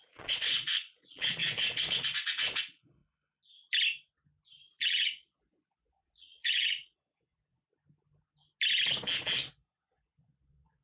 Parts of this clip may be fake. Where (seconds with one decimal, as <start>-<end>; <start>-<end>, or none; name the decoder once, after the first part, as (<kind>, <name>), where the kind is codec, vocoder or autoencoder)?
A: 0.0-3.0 (vocoder, Vocos); 4.8-7.7; 9.5-10.8